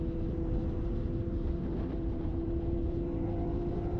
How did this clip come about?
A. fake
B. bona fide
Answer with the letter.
A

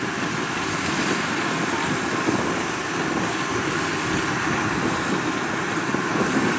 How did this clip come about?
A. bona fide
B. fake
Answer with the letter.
A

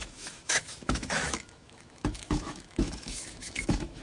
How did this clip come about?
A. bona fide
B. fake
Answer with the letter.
B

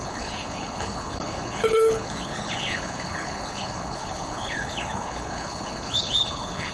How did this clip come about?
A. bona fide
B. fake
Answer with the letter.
B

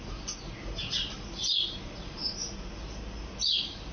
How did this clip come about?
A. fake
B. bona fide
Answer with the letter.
A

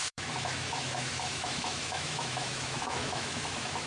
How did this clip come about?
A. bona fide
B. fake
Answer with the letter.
B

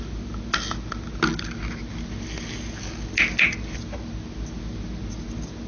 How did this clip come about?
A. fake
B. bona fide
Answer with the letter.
B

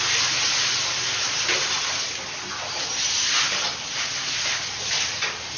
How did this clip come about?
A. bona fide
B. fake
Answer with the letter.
A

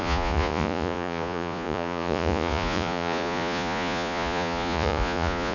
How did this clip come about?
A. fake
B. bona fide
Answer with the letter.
A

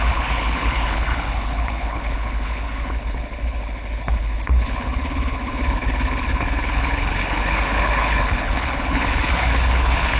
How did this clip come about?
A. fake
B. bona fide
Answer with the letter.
A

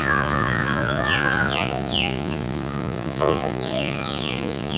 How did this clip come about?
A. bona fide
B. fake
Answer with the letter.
B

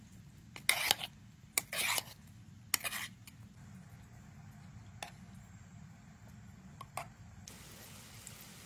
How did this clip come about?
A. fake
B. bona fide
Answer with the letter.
B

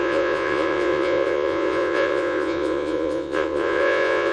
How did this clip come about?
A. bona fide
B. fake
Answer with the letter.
B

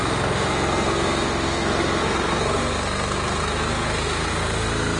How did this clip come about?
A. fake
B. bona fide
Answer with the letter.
A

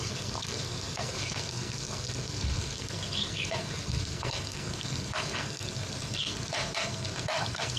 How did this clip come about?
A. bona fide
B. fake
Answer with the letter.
B